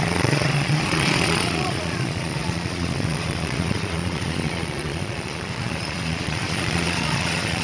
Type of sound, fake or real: fake